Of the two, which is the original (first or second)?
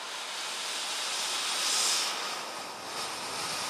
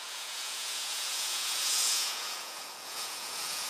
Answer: first